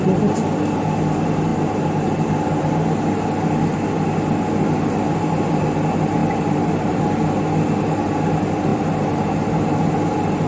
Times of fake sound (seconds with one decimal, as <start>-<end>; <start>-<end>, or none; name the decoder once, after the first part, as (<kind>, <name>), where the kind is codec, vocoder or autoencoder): 6.2-7.0 (vocoder, BigVGAN v2); 8.7-9.9